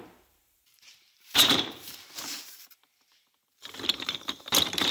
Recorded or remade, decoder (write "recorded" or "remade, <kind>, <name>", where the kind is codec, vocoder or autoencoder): remade, vocoder, BigVGAN v2